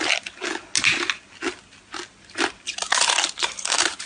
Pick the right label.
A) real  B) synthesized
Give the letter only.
A